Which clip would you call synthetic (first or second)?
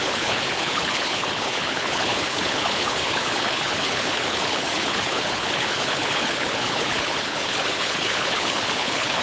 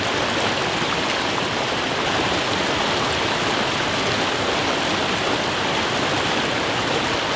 first